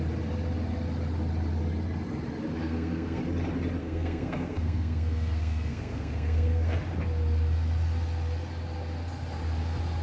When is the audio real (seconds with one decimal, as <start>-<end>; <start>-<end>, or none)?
0.0-2.6; 3.2-3.8; 6.8-10.0

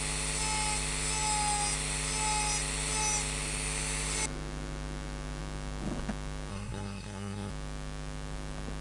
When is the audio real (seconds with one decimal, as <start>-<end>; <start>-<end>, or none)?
0.0-6.5; 7.5-8.8

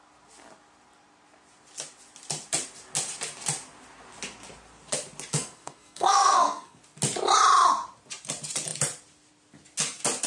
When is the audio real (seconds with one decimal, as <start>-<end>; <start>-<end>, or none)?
0.0-5.3; 6.8-10.3

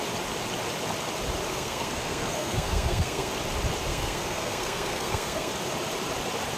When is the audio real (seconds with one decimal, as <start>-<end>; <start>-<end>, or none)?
0.0-1.5; 3.3-3.9; 5.5-6.6

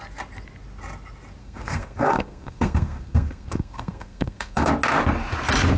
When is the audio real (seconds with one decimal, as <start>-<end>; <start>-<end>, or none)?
0.0-1.4; 4.7-5.8

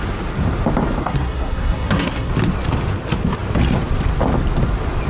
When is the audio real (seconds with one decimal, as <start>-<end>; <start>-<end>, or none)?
0.0-1.0; 2.3-5.1

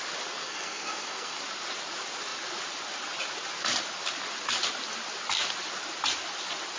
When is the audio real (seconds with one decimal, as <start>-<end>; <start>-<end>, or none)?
0.0-0.4; 1.4-6.8